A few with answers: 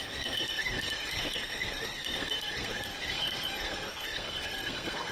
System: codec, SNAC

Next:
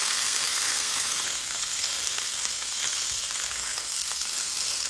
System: codec, SNAC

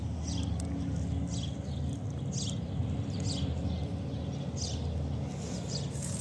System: none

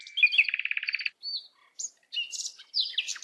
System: none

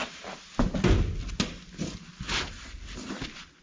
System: none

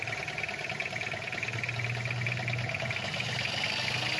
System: none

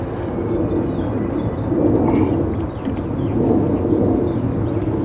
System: none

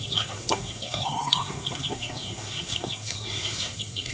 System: codec, SNAC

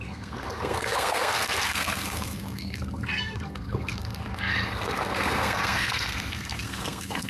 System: codec, SNAC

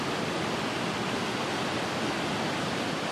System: none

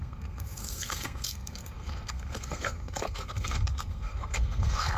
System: codec, SNAC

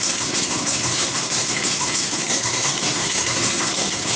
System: codec, SNAC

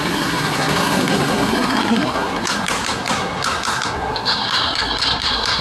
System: codec, SNAC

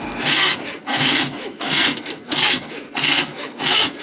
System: codec, SNAC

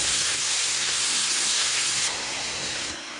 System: codec, SNAC